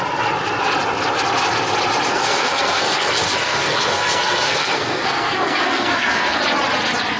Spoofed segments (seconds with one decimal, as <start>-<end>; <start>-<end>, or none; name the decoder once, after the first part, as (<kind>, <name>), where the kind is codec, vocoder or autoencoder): 2.1-6.4 (codec, SNAC)